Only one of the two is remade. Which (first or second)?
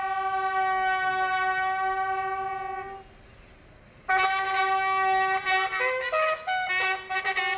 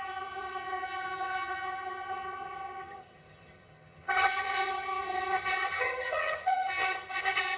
second